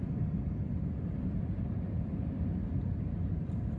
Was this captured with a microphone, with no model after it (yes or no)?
no